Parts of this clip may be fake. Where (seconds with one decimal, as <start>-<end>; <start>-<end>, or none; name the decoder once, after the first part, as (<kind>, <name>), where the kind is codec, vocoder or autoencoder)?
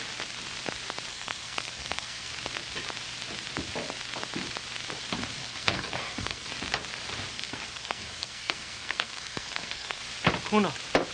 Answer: 1.1-2.3 (codec, SNAC); 5.4-6.5; 7.3-10.0